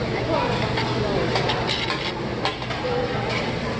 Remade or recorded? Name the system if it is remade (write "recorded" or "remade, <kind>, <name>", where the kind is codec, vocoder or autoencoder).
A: recorded